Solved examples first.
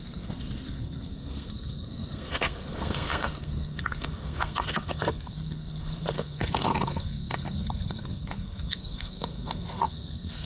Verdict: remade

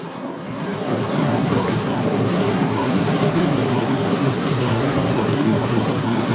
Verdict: remade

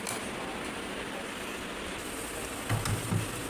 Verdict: recorded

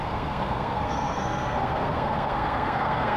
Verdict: remade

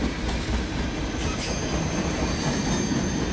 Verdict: recorded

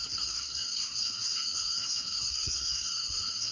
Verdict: remade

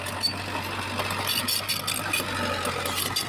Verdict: recorded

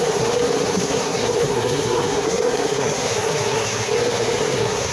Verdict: remade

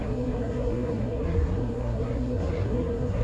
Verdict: remade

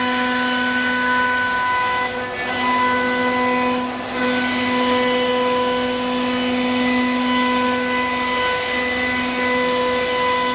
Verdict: recorded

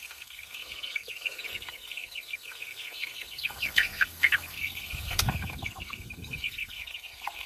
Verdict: remade